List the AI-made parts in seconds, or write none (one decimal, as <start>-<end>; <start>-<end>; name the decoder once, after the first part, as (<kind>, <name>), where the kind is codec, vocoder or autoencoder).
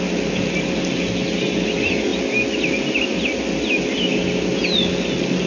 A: none